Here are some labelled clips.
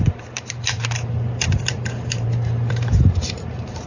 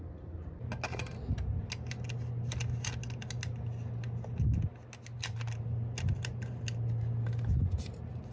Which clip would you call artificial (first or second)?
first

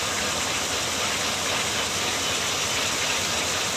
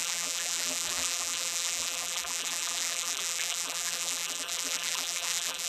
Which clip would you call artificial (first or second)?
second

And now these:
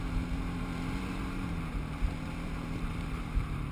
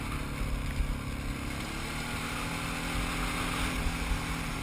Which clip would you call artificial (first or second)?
first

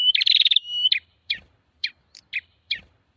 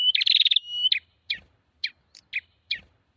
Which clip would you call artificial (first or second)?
first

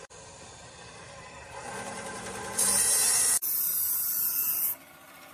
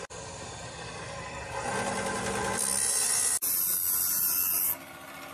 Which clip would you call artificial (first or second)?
first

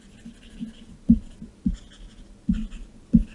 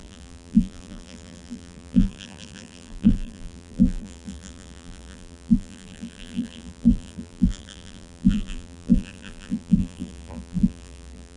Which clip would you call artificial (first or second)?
second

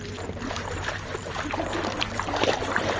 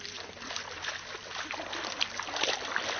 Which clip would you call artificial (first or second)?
first